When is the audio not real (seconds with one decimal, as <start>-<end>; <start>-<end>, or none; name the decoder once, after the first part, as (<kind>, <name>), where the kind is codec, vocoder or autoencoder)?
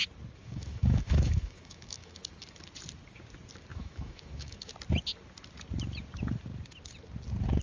0.4-2.2 (autoencoder, DAC-VAE); 3.7-4.7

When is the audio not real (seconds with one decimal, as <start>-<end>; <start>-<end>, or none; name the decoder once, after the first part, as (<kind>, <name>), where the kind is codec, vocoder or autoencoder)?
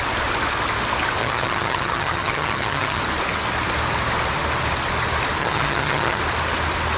1.2-3.0 (vocoder, HiFi-GAN); 5.4-6.2